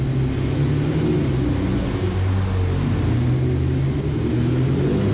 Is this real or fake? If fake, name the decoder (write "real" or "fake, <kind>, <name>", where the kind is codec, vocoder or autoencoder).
real